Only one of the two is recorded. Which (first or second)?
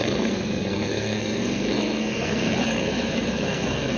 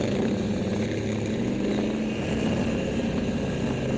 second